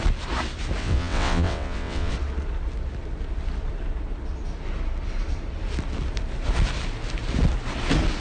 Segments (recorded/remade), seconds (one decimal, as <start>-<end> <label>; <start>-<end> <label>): 0.0-0.8 recorded; 0.8-2.1 remade; 2.1-8.2 recorded